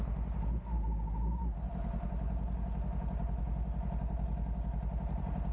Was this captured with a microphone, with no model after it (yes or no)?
yes